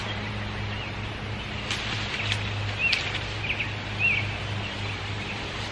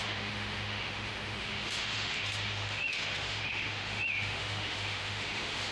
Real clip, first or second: first